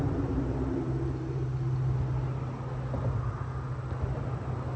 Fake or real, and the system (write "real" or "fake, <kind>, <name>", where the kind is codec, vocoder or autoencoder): real